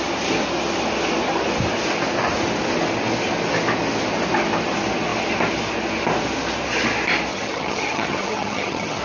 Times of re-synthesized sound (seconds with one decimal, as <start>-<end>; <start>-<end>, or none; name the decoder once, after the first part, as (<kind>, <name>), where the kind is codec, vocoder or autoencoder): 7.3-9.0 (vocoder, HiFi-GAN)